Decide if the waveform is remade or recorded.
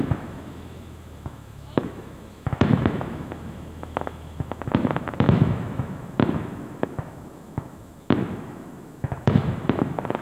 remade